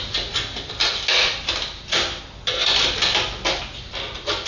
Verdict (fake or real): real